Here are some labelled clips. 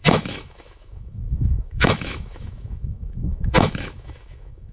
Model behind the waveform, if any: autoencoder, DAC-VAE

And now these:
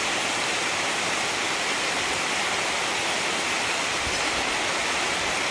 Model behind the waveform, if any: none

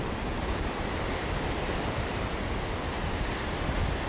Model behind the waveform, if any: none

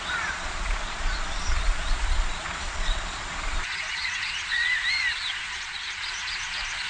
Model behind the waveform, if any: vocoder, Vocos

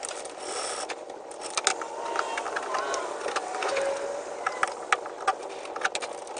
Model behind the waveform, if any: none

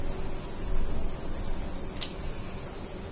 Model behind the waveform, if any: none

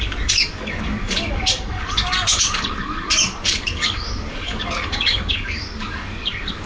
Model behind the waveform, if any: codec, DAC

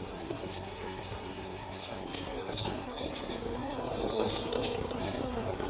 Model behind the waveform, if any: codec, SNAC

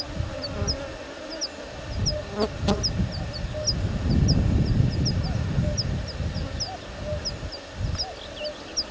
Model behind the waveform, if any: none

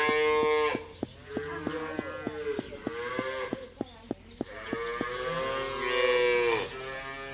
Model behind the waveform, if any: none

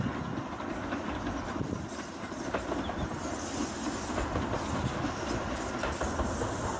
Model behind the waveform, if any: none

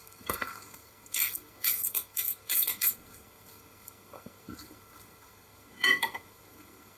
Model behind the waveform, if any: codec, SNAC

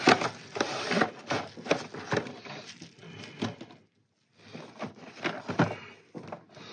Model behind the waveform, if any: none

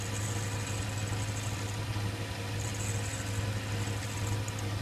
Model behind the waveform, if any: none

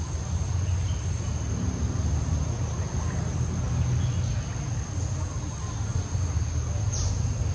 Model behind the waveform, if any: none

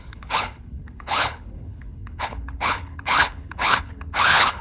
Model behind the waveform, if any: codec, HILCodec